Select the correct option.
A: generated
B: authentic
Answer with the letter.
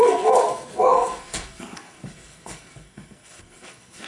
A